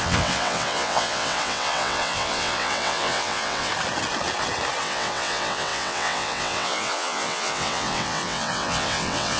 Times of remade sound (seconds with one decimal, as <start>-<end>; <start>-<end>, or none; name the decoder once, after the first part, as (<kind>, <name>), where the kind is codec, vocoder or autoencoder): 0.0-3.7 (vocoder, WaveNeXt); 4.8-9.4

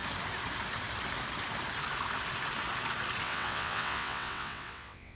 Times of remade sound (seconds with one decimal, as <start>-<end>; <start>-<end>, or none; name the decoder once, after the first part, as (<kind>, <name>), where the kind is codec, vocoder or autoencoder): 3.2-5.2 (vocoder, WaveNeXt)

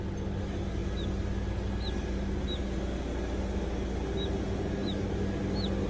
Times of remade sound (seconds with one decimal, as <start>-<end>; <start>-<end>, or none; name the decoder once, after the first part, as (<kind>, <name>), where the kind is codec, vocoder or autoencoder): none

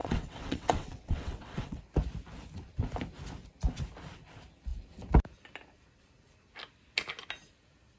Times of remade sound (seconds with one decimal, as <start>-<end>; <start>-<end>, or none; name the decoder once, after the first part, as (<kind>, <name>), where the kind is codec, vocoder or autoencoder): 0.0-1.8 (vocoder, WaveNeXt)